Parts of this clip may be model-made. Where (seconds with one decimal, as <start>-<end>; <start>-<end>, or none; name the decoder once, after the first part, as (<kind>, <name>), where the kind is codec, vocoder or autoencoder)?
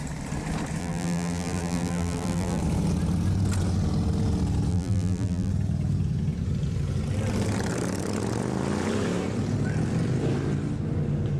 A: 0.8-2.6 (vocoder, BigVGAN v2); 4.7-5.5